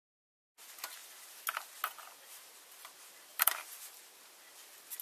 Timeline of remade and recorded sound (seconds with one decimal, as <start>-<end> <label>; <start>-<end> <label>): 0.0-3.3 recorded; 3.3-4.0 remade; 4.0-5.0 recorded